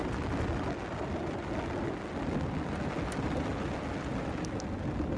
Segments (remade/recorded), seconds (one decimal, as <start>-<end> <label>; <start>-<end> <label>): 0.0-5.2 recorded